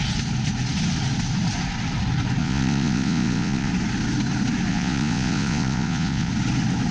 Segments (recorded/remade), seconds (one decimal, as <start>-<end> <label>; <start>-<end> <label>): 0.0-2.4 recorded; 2.4-3.7 remade; 3.7-4.7 recorded; 4.7-6.3 remade; 6.3-6.9 recorded